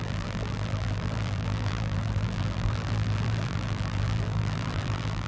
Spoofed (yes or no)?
yes